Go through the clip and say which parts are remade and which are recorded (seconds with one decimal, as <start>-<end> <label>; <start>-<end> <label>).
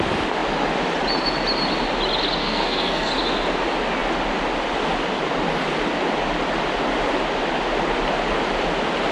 0.0-2.4 recorded; 2.4-3.1 remade; 3.1-9.1 recorded